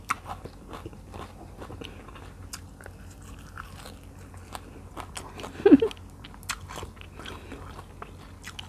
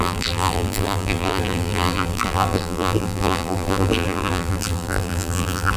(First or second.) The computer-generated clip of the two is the second